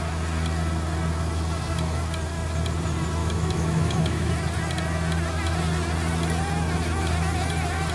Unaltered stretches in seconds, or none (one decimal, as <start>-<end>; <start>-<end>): 0.0-3.2; 4.3-7.9